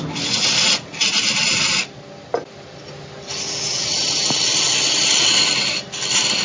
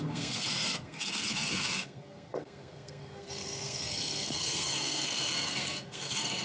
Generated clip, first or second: second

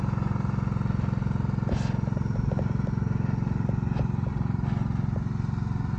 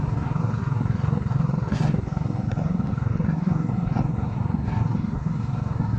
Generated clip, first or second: second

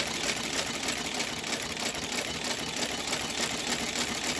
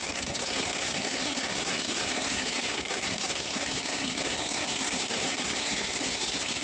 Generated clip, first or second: second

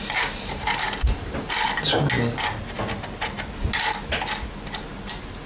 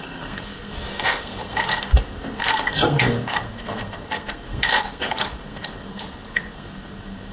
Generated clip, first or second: second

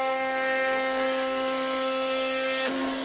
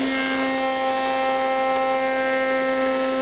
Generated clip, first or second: first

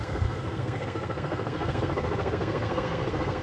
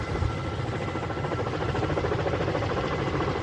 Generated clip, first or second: first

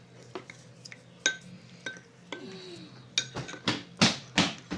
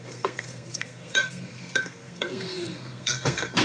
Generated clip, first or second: second